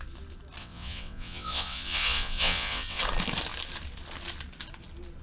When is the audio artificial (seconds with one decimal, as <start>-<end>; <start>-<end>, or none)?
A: 0.6-3.0